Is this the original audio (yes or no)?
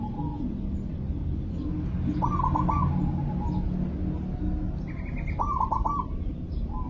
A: yes